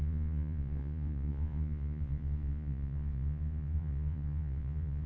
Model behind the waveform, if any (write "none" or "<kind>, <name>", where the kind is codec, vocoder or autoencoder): vocoder, Vocos